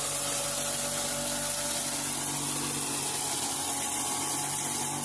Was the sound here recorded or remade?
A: recorded